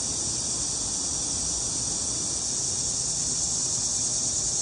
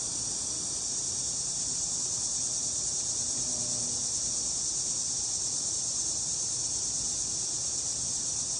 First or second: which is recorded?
first